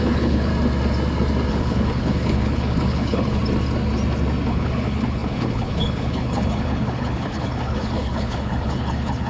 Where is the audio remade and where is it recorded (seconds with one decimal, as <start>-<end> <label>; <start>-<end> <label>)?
0.0-0.5 remade; 0.5-1.5 recorded; 1.5-3.4 remade; 3.4-4.5 recorded; 4.5-9.3 remade